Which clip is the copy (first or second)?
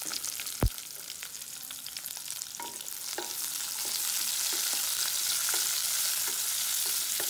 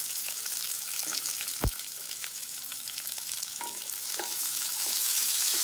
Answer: second